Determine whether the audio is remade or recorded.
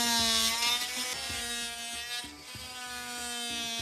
recorded